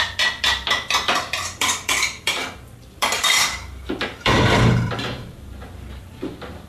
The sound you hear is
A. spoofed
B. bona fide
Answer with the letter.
A